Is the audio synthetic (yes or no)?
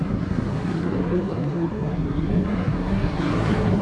yes